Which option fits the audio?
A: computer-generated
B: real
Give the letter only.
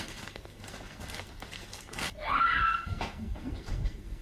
A